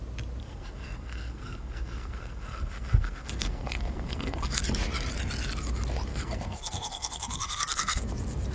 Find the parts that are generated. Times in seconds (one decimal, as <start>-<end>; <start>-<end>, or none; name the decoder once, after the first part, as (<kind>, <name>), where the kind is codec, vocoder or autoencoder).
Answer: 0.4-4.6 (codec, SNAC); 6.1-8.1

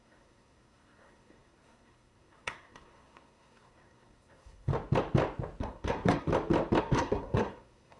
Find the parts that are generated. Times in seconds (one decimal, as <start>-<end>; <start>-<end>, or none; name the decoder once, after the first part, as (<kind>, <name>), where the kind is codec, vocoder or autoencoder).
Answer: 0.0-4.7 (codec, SNAC); 5.6-6.3; 6.8-8.0